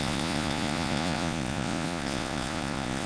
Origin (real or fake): fake